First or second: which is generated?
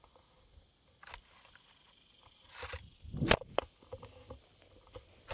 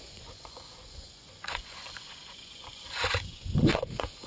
second